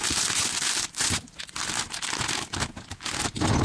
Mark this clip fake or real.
real